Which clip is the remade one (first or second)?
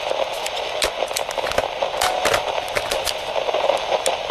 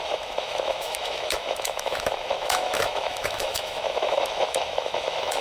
second